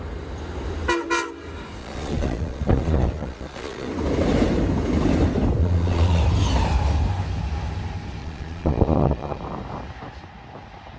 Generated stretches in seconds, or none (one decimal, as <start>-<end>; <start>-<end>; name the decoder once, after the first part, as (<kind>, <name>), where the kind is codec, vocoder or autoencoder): 1.8-3.9 (vocoder, Vocos); 5.6-6.2; 8.2-9.4